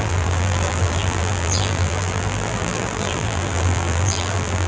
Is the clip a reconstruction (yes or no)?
yes